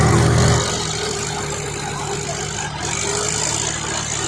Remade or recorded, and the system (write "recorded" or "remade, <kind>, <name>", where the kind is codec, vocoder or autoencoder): recorded